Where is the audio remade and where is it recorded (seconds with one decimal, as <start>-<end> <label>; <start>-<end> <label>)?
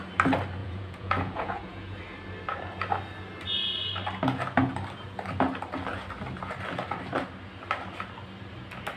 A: 0.0-0.6 recorded; 0.6-2.0 remade; 2.0-9.0 recorded